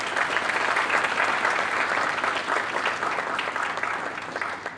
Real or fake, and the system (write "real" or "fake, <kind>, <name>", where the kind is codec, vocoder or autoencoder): real